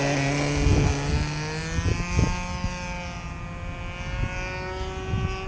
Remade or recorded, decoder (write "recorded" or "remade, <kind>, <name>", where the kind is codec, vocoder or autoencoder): recorded